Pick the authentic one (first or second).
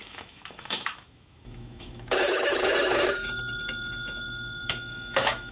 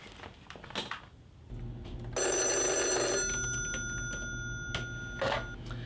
second